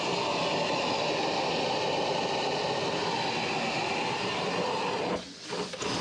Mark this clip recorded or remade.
recorded